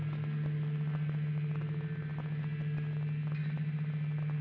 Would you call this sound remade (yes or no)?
no